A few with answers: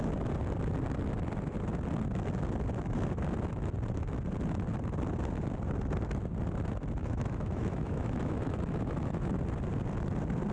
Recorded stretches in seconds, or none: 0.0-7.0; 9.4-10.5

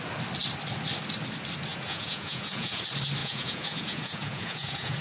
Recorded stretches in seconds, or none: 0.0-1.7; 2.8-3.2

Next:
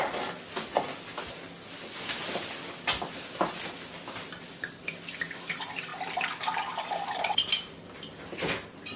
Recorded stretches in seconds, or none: 0.0-9.0

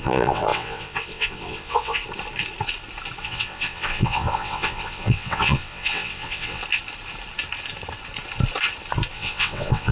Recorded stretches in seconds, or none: 2.0-3.2; 6.6-9.1

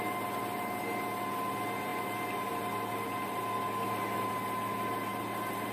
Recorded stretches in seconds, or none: 0.0-5.7

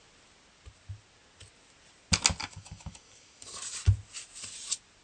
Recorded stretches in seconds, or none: 0.0-2.4; 3.6-5.0